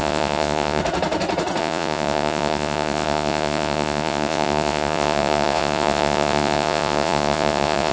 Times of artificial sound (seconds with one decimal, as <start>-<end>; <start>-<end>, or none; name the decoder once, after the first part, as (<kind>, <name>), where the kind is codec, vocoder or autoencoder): 0.0-0.8 (vocoder, Vocos); 1.6-7.9